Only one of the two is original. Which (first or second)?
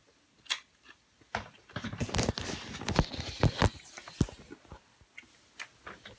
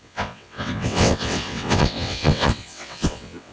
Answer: first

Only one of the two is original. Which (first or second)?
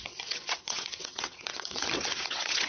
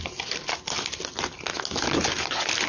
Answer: second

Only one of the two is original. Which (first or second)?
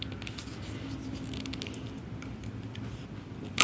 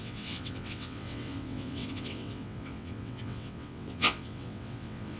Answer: first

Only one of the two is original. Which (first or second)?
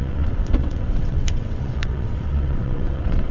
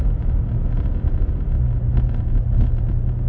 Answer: second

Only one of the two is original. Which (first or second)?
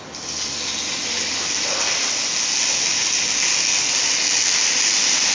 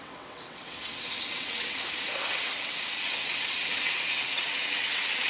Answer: first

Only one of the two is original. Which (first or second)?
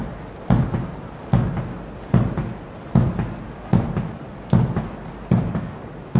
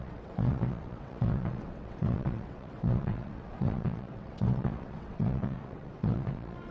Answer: first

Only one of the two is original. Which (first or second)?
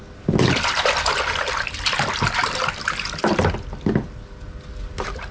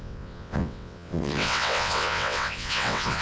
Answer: first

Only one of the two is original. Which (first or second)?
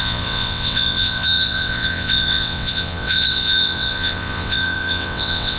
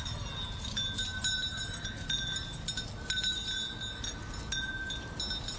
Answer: second